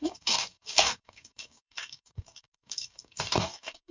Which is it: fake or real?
fake